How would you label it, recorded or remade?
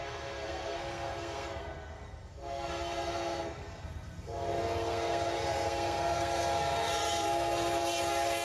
remade